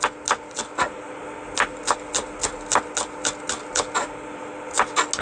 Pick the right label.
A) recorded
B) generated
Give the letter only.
A